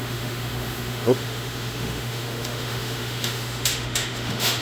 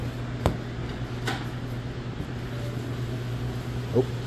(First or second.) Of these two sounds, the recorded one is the second